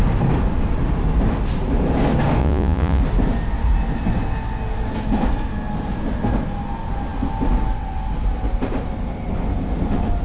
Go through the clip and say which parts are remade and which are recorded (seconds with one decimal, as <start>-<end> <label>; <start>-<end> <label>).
0.0-2.4 recorded; 2.4-3.0 remade; 3.0-10.2 recorded